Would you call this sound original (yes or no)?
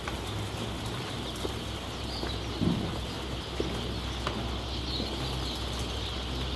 yes